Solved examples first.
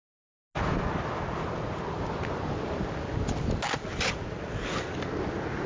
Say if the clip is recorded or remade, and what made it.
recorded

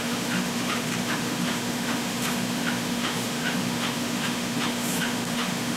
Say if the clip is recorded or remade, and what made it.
remade, autoencoder, DAC-VAE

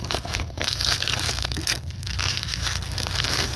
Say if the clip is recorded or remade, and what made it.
remade, codec, SNAC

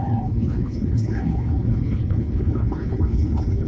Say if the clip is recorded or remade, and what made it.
remade, codec, HILCodec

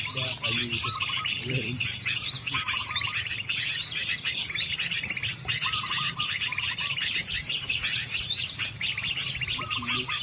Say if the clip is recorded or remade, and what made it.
remade, vocoder, BigVGAN v2